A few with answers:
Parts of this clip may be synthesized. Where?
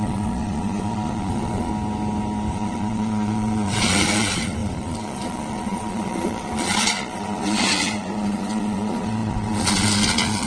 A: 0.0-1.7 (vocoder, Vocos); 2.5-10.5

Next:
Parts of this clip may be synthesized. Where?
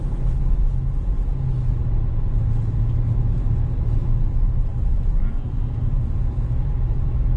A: none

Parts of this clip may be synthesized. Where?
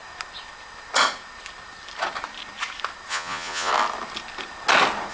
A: 3.1-3.7 (vocoder, Vocos)